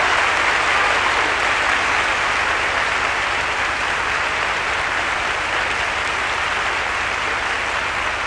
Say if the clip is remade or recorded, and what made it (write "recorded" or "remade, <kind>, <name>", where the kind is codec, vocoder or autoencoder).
recorded